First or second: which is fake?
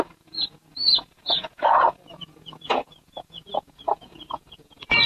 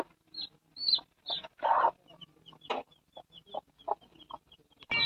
first